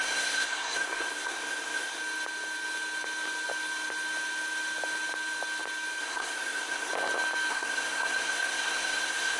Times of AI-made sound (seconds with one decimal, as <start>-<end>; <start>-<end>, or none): 0.0-2.0; 6.0-6.9; 7.5-9.4